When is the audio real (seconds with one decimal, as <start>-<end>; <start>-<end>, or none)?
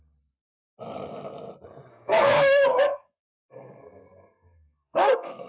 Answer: 0.0-1.9